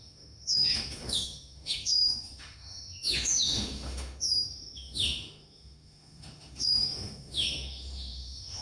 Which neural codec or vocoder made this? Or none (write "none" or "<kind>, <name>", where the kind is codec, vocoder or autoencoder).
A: autoencoder, DAC-VAE